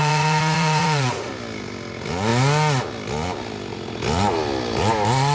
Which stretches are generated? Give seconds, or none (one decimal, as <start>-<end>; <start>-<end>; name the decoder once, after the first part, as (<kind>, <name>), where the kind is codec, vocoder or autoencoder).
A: 0.0-1.3 (vocoder, Vocos)